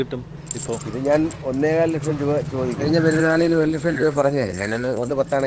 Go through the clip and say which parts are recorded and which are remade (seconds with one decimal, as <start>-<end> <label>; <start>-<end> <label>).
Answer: 0.0-3.2 recorded; 3.2-5.1 remade; 5.1-5.5 recorded